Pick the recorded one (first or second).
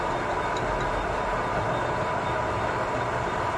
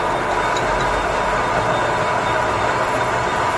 second